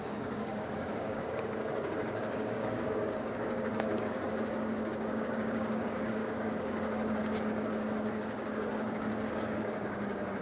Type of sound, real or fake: fake